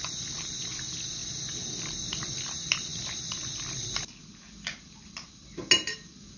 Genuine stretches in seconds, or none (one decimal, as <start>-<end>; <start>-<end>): 0.0-6.4